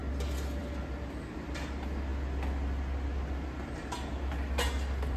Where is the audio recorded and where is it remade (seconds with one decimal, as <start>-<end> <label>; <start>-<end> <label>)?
0.0-5.2 recorded